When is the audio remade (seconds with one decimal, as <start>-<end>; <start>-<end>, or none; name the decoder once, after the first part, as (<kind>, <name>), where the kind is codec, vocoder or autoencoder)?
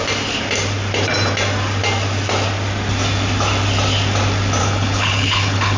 4.6-5.8 (codec, HILCodec)